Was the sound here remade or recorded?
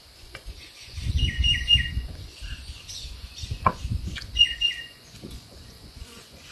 remade